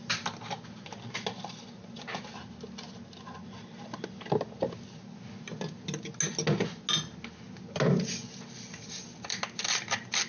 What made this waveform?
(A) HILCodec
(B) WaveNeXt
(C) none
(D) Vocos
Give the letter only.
C